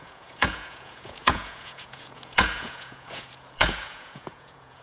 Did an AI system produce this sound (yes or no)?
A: yes